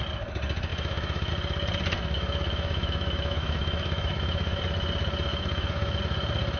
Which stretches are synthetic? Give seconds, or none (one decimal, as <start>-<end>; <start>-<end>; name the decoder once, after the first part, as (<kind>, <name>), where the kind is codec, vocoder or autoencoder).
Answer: 0.7-1.3 (autoencoder, DAC-VAE); 2.0-4.6; 5.3-6.0

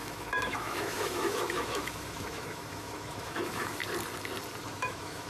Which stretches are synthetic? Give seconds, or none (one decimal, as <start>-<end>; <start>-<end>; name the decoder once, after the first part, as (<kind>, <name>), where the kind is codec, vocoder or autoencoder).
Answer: 0.0-3.8 (autoencoder, DAC-VAE); 4.7-5.3

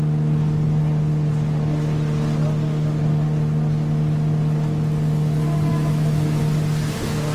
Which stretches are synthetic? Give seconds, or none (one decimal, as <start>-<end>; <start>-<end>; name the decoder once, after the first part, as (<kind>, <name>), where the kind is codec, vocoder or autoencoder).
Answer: 5.7-6.4 (autoencoder, DAC-VAE)

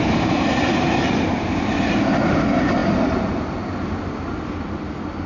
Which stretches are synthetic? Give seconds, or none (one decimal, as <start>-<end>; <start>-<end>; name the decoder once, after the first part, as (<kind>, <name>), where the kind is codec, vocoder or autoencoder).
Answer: none

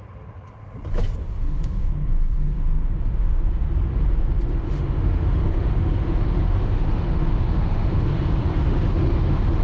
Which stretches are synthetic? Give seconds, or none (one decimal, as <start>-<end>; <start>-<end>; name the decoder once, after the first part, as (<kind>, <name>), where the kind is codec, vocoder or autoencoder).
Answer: 1.2-3.7 (autoencoder, DAC-VAE); 4.5-8.1; 8.5-9.6

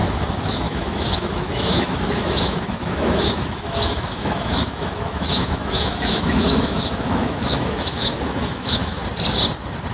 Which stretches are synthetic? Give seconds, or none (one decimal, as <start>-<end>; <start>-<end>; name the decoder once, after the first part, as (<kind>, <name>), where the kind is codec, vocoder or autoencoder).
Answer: 0.0-9.0 (autoencoder, DAC-VAE)

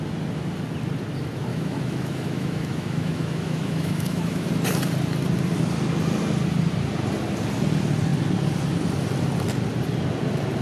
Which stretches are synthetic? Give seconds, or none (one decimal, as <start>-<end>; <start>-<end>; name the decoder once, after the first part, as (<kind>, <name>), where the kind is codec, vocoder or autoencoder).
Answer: 1.5-4.5 (autoencoder, DAC-VAE)